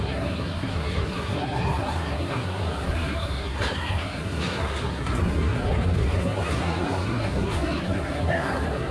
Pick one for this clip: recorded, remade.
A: remade